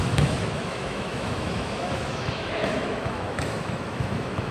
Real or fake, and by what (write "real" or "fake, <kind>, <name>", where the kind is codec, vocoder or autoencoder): fake, autoencoder, DAC-VAE